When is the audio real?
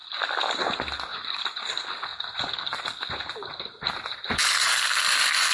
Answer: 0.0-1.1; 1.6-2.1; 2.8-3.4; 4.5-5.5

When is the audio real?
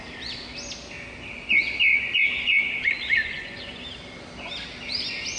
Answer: 0.0-1.9; 3.8-5.4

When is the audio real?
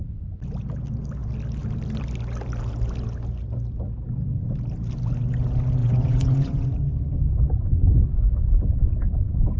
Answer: 0.0-5.8; 6.7-9.6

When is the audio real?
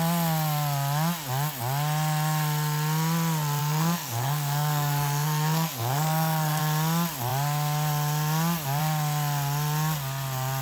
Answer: 0.0-3.6; 6.6-10.6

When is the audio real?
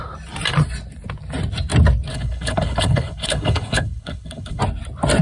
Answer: 0.0-2.1; 4.6-5.2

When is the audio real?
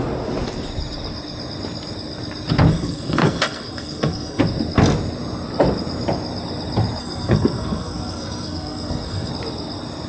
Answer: 0.0-2.7; 4.4-7.0; 9.3-10.1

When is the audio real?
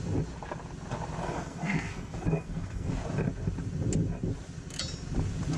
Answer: 0.0-1.2; 2.9-5.6